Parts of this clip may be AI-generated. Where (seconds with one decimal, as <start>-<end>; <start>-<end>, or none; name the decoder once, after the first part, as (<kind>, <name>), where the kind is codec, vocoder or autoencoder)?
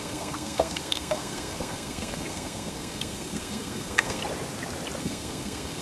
0.0-4.2 (codec, SNAC); 5.0-5.8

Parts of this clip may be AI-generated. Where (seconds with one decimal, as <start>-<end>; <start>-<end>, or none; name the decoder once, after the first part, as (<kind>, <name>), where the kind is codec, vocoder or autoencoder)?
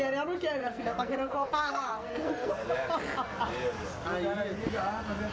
0.6-2.5 (codec, SNAC)